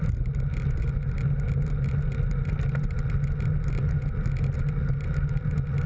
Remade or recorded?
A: recorded